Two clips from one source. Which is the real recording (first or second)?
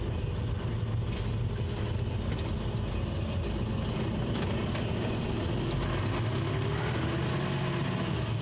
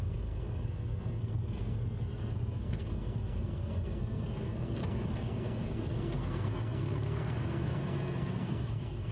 first